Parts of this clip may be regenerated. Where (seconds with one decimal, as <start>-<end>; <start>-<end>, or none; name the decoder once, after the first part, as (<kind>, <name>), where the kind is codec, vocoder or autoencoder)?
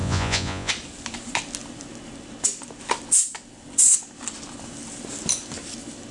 0.0-0.7 (vocoder, Vocos)